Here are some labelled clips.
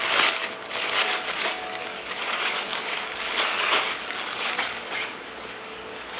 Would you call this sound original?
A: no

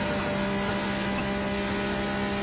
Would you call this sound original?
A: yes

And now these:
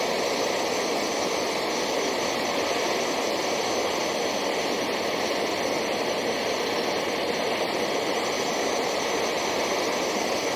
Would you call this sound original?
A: yes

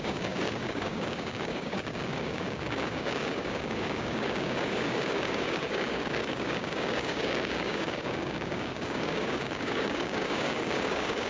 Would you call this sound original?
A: no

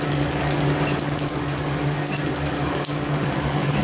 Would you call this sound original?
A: no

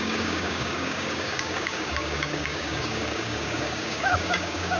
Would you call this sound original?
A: no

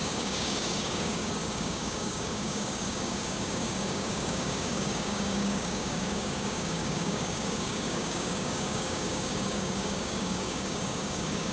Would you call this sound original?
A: no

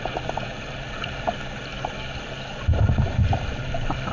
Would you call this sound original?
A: yes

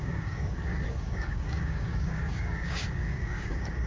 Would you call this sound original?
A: no